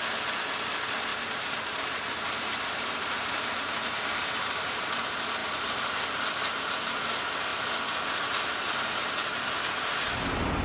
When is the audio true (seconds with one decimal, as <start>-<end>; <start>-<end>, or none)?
0.0-1.1; 4.8-5.4; 6.3-9.2; 9.9-10.6